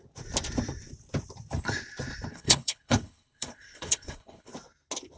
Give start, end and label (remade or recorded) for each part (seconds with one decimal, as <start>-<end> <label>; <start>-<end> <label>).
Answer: 0.0-2.3 recorded; 2.3-4.5 remade; 4.5-5.2 recorded